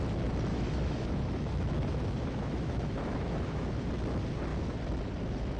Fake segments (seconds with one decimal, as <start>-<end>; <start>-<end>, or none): 0.5-3.9